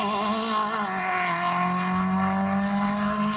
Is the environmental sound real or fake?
real